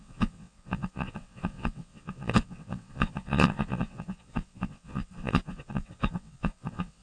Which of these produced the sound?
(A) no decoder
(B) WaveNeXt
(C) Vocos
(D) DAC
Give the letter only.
B